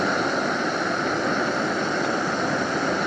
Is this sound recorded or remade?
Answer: recorded